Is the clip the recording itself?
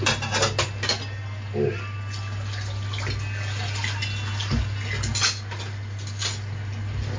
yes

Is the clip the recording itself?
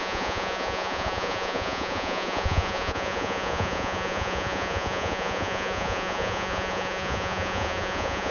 no